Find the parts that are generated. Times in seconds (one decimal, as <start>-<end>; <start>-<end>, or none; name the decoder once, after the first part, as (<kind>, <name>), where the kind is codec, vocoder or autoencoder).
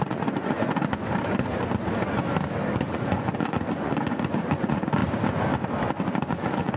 0.0-0.7 (vocoder, Vocos); 2.8-5.0; 6.3-6.8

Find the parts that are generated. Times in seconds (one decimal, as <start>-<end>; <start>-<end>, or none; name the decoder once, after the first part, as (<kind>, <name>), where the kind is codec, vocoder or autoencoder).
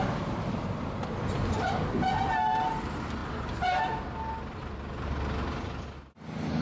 none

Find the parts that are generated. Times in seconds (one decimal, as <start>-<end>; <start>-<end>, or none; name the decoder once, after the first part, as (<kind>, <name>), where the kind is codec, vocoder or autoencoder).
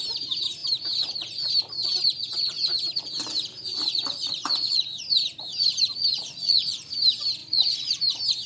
3.7-5.0 (vocoder, Vocos); 6.1-6.9; 7.4-8.0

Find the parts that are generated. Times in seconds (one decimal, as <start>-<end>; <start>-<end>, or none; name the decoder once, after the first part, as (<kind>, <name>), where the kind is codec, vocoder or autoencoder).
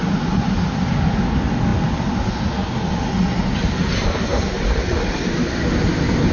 none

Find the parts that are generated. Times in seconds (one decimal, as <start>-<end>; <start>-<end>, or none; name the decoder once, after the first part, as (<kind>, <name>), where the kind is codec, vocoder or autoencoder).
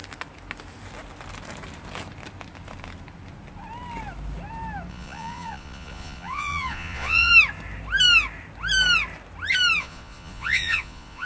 4.9-7.3 (vocoder, Vocos); 9.8-11.3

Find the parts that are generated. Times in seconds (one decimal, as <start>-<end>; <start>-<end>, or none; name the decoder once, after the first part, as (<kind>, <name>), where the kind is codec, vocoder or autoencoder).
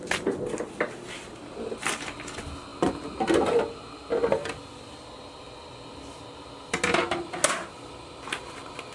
none